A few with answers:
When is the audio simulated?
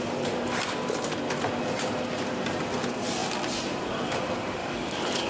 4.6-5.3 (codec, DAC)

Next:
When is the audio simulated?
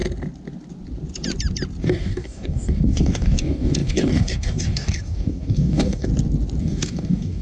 1.8-6.1 (codec, DAC); 6.6-7.4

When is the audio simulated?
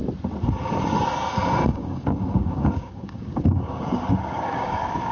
1.7-5.1 (codec, DAC)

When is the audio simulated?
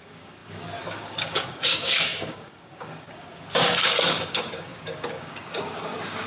0.0-6.3 (codec, DAC)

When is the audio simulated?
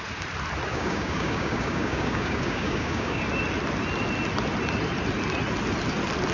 0.7-3.2 (codec, DAC)